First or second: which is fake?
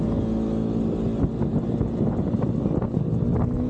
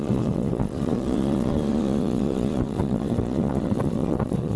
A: second